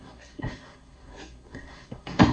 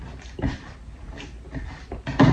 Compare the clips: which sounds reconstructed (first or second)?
first